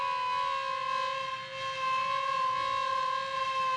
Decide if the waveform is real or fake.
real